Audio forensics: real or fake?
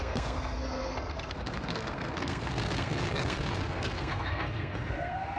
fake